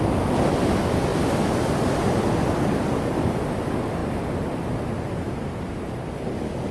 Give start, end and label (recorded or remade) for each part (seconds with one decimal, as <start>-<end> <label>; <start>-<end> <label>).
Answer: 0.0-6.7 recorded